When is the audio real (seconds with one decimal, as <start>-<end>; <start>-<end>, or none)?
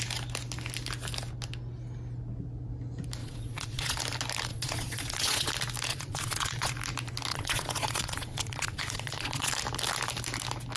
0.0-3.2; 4.0-4.5; 5.5-5.9; 6.7-7.3; 9.5-10.8